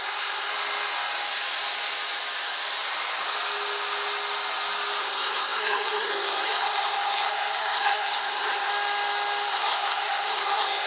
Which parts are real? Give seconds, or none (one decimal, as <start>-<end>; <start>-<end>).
0.5-5.0; 8.7-9.5